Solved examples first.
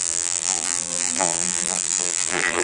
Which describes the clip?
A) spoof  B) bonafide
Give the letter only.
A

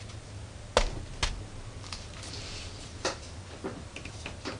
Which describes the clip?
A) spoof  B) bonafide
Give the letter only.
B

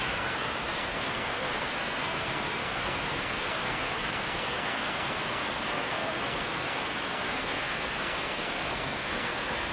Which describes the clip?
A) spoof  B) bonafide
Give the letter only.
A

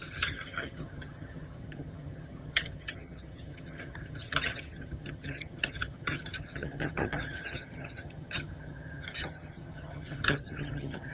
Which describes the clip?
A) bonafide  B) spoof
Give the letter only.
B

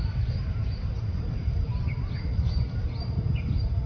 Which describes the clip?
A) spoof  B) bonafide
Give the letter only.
A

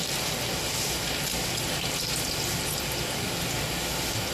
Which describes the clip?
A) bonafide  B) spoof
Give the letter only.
A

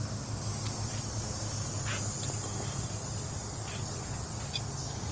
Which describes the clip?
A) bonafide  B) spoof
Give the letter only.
A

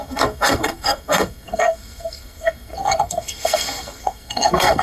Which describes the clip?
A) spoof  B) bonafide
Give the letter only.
A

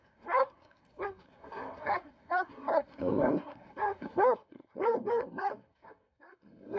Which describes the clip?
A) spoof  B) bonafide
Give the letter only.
A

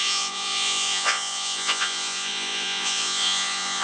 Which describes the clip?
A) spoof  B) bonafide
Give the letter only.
A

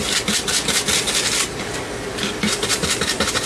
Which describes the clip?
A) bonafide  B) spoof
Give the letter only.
A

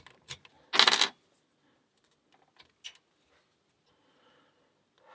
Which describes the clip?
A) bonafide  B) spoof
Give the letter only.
A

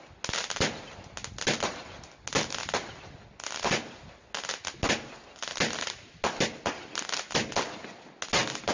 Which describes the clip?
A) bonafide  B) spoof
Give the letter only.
A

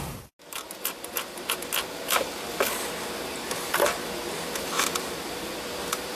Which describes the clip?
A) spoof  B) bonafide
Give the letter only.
B